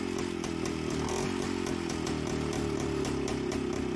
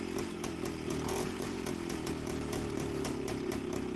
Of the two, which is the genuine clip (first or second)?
first